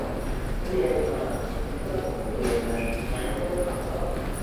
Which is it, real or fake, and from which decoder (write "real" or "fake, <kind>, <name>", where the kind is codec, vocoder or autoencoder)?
real